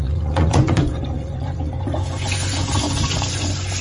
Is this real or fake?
fake